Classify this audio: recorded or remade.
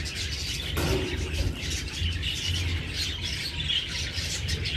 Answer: recorded